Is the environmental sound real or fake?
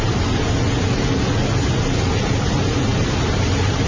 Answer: real